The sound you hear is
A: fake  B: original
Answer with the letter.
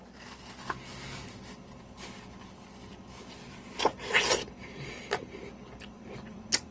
B